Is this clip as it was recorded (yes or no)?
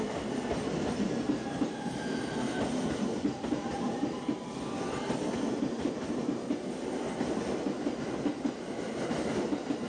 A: yes